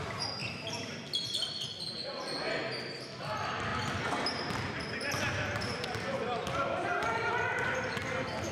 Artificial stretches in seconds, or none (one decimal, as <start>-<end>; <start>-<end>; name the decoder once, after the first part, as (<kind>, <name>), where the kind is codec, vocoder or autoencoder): 0.4-1.5 (vocoder, BigVGAN v2)